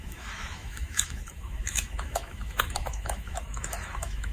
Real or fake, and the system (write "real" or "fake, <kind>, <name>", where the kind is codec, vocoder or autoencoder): fake, autoencoder, DAC-VAE